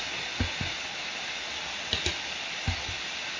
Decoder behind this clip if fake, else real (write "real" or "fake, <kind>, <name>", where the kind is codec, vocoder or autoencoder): real